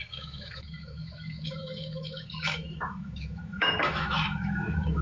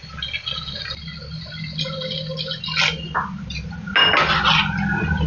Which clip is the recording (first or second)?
second